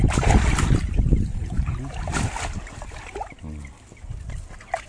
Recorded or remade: recorded